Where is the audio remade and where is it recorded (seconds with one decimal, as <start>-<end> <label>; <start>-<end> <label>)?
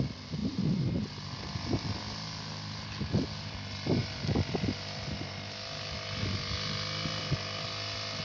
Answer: 0.0-8.2 recorded